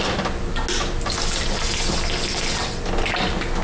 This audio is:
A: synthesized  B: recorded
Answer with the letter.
B